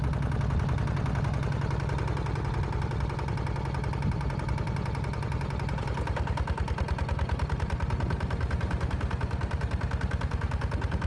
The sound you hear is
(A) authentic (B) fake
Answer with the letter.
A